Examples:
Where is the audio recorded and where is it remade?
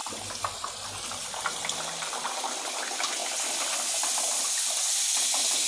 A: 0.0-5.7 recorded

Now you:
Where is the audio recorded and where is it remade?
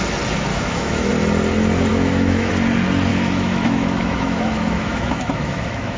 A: 0.0-0.5 recorded; 0.5-1.1 remade; 1.1-1.9 recorded; 1.9-2.5 remade; 2.5-3.1 recorded; 3.1-6.0 remade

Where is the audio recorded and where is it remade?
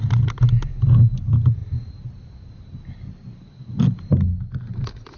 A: 0.0-5.2 recorded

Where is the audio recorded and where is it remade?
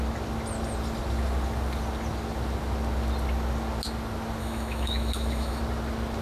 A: 0.0-4.4 recorded; 4.4-5.6 remade; 5.6-6.2 recorded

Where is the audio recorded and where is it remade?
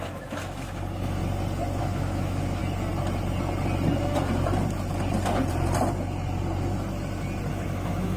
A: 0.0-1.2 remade; 1.2-1.8 recorded; 1.8-2.6 remade; 2.6-7.5 recorded; 7.5-8.2 remade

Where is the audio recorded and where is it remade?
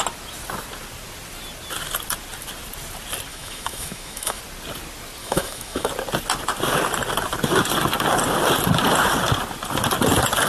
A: 0.0-3.3 recorded; 3.3-4.4 remade; 4.4-5.2 recorded; 5.2-5.9 remade; 5.9-10.5 recorded